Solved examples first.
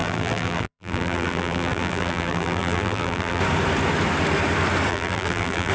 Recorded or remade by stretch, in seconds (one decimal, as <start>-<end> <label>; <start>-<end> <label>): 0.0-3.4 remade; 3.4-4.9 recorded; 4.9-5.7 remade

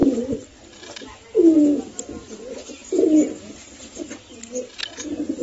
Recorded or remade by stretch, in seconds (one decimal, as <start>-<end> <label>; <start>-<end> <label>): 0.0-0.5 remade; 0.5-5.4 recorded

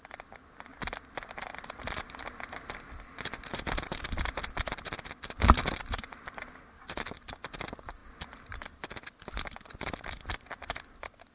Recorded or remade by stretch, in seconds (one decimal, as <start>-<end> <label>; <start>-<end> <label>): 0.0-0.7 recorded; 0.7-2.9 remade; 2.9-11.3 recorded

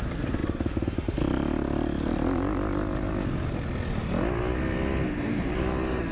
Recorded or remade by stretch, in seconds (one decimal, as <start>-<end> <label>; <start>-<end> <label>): 0.0-6.1 recorded